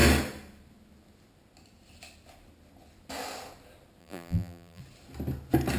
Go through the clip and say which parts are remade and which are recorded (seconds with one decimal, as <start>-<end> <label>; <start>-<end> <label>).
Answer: 0.0-4.0 recorded; 4.0-4.8 remade; 4.8-5.8 recorded